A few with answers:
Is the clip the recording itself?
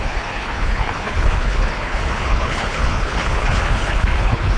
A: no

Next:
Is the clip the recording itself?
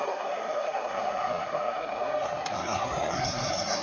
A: no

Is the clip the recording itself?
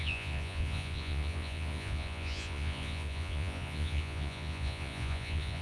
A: no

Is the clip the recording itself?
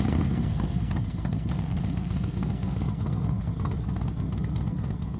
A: no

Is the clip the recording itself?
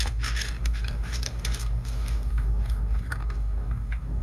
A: no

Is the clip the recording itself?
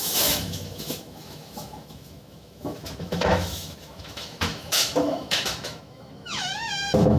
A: no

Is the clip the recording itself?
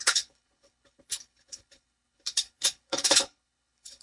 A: no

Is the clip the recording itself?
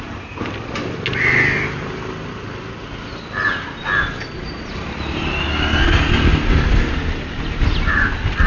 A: yes